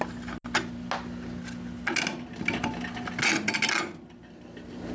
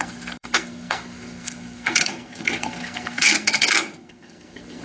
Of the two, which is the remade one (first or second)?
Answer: second